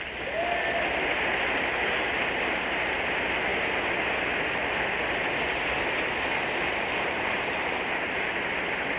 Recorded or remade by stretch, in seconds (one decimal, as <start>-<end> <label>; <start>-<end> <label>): 0.0-9.0 recorded

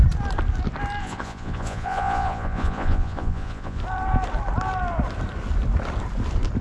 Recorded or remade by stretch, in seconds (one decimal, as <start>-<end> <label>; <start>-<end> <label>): 0.0-1.0 recorded; 1.0-3.8 remade; 3.8-6.6 recorded